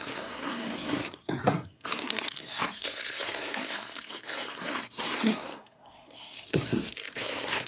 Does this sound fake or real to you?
fake